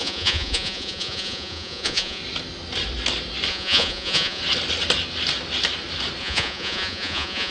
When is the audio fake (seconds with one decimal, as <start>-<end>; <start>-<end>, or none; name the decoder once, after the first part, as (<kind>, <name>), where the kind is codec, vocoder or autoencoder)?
0.0-2.2 (vocoder, Vocos); 3.5-4.4; 6.2-7.5